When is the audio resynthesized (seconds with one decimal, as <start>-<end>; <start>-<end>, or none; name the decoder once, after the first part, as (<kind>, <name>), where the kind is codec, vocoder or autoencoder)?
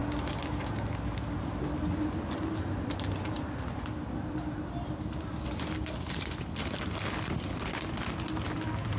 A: 4.0-9.0 (vocoder, BigVGAN v2)